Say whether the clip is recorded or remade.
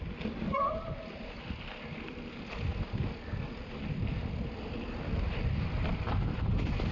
recorded